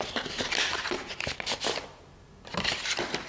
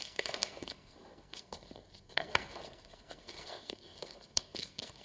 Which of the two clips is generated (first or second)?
second